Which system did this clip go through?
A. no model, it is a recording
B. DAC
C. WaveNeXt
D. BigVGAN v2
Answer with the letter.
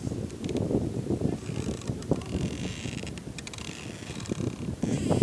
D